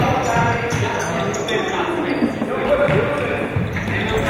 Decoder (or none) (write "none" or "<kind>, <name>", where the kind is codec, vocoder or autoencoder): none